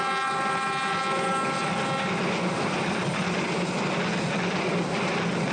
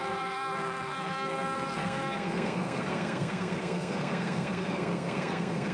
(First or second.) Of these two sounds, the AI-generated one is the second